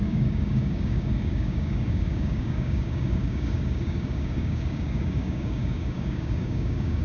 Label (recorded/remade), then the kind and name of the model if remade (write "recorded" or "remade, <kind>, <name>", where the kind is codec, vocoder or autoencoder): remade, codec, DAC